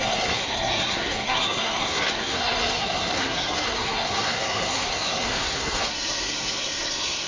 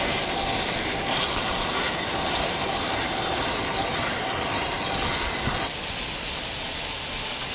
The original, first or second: second